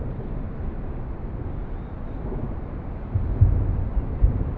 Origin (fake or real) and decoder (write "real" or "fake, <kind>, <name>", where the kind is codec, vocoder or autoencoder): real